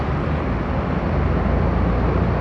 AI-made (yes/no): no